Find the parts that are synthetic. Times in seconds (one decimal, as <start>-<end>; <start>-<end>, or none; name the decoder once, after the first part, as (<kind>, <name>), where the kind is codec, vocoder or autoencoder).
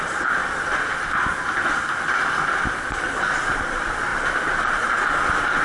4.1-5.0 (vocoder, BigVGAN v2)